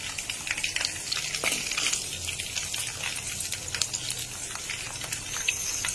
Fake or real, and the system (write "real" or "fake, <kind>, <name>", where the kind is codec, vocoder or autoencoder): real